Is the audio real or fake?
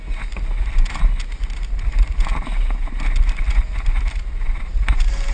real